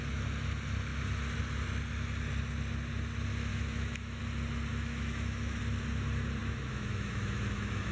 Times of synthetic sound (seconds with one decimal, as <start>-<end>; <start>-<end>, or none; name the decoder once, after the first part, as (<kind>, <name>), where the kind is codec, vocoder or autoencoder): 3.5-4.2 (autoencoder, DAC-VAE); 4.7-5.6; 6.4-7.9